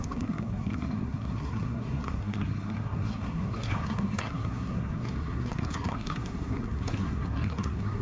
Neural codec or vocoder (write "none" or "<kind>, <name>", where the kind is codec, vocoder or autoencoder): codec, SNAC